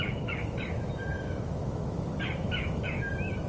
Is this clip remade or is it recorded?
remade